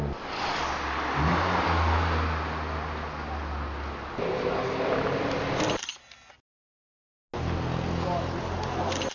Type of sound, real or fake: real